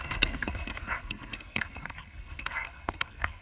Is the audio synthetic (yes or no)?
yes